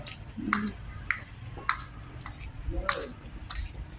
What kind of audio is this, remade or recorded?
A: recorded